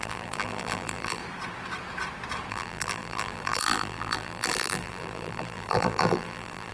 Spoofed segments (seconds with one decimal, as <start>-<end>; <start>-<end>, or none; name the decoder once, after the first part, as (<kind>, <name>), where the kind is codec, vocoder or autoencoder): 0.0-1.2 (vocoder, BigVGAN v2); 2.5-6.7

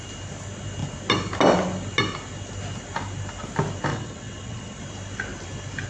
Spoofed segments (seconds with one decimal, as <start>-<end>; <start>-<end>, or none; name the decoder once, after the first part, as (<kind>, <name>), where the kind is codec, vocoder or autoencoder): 3.9-4.8 (vocoder, WaveNeXt)

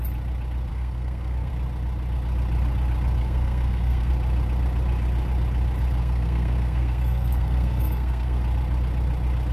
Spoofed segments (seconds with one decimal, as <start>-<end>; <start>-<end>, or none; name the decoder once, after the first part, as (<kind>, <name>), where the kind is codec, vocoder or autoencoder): 0.7-1.5 (codec, SNAC); 3.2-4.1; 6.0-8.4

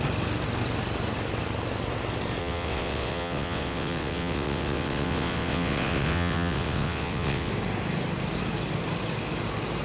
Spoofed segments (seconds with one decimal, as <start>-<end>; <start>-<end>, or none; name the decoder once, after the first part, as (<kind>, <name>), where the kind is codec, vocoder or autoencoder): 2.4-7.5 (vocoder, WaveNeXt)

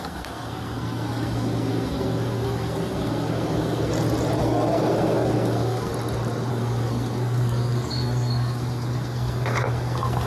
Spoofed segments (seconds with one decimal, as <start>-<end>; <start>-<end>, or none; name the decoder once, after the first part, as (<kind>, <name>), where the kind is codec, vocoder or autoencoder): 0.0-3.9 (codec, SNAC); 4.4-5.9; 6.5-10.3